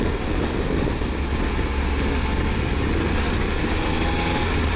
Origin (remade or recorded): recorded